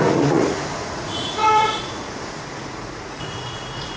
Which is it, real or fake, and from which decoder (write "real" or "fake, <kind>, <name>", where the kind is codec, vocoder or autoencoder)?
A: fake, vocoder, Vocos